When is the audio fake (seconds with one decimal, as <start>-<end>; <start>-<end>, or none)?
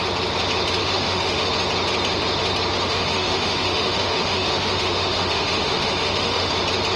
0.8-1.5; 2.8-6.5